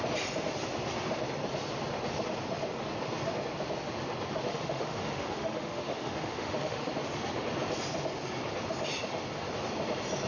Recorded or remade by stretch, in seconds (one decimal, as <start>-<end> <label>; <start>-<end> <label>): 0.0-4.5 recorded; 4.5-6.9 remade; 6.9-10.3 recorded